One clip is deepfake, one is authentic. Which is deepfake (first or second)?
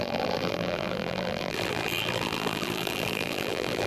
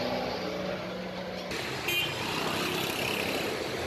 first